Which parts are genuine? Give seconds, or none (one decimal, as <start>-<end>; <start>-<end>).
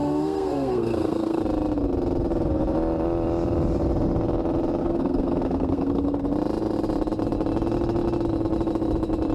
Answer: 1.4-4.8; 6.2-9.3